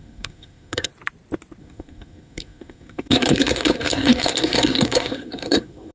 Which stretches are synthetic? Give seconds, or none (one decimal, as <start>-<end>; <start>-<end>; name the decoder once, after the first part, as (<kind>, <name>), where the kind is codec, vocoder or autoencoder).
0.0-0.9 (codec, SNAC); 1.6-5.9